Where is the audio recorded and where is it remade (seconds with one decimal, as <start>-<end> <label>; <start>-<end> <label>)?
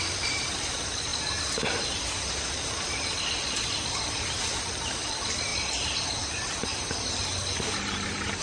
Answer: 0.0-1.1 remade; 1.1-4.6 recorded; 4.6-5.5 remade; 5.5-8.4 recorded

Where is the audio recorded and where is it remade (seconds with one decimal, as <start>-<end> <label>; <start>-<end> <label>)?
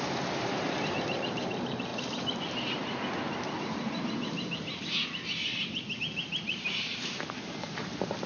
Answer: 0.0-1.9 remade; 1.9-6.0 recorded; 6.0-8.3 remade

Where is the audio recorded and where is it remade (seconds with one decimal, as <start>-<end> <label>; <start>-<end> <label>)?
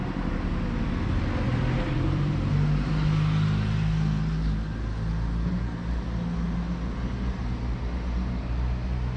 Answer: 0.0-1.5 recorded; 1.5-2.9 remade; 2.9-9.2 recorded